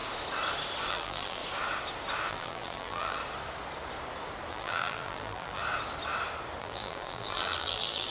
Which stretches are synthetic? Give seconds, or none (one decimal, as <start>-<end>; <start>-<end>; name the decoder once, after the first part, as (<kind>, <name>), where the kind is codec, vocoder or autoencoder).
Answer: 0.9-1.4 (vocoder, BigVGAN v2); 2.3-3.2; 4.5-5.6; 6.6-8.1